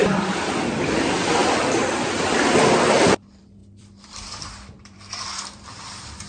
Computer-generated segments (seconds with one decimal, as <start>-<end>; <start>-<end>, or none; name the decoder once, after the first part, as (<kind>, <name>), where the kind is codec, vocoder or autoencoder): 0.0-6.3 (vocoder, BigVGAN v2)